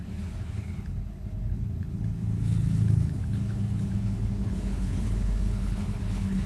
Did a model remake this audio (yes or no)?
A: yes